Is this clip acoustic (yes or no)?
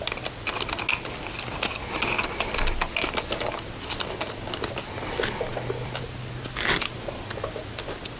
yes